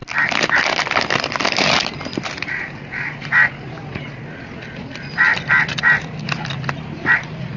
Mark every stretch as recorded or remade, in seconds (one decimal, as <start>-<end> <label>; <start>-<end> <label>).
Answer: 0.0-7.6 recorded